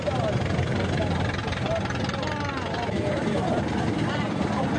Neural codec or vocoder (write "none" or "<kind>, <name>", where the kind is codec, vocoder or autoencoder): none